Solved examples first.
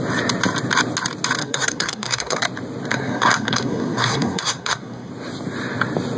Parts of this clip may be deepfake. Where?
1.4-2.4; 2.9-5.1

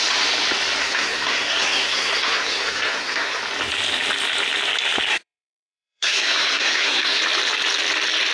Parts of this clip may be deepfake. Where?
0.8-3.4; 5.1-7.2

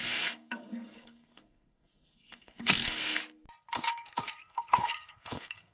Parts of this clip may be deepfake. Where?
0.0-3.2; 3.7-5.7